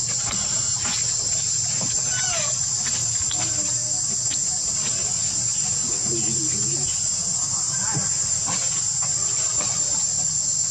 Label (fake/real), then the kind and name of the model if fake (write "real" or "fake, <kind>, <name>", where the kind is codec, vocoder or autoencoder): real